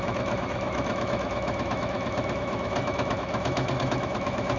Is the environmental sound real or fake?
fake